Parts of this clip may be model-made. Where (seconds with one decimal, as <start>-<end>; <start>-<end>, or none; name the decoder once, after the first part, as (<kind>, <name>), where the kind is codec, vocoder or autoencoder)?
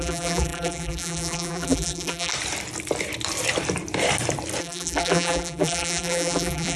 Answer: 0.0-2.3 (vocoder, BigVGAN v2); 4.6-6.8